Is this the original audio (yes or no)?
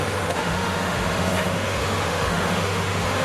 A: no